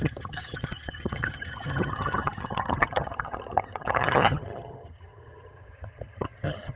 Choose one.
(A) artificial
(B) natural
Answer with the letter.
A